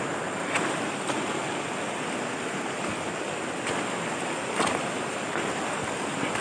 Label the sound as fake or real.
real